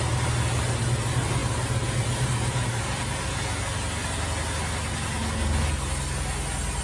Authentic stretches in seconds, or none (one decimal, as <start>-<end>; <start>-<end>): 0.0-6.8